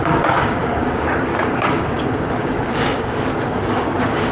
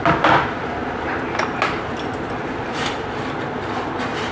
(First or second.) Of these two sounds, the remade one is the first